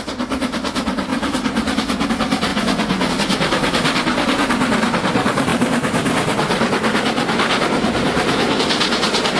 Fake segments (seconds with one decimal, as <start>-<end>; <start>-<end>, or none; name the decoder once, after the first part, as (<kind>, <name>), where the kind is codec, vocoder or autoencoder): 2.5-3.1 (vocoder, Vocos)